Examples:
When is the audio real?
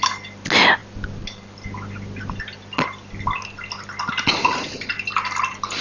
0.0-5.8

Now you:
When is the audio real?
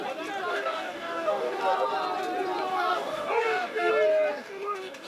0.0-0.5; 1.6-2.7; 3.9-4.3